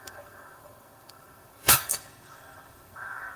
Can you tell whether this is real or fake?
fake